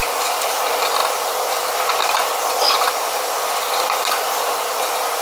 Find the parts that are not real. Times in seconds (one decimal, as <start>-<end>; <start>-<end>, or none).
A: none